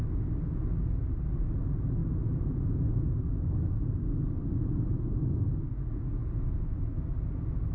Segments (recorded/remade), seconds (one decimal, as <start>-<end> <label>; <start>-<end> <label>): 0.0-7.7 recorded